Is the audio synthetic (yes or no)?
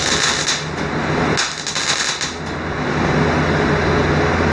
no